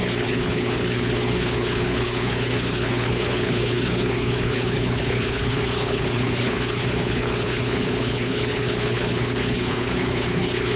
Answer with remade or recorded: remade